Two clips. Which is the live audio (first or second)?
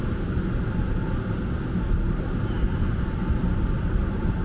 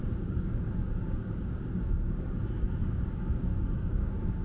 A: first